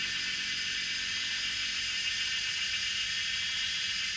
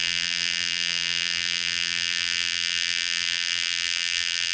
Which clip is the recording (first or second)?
first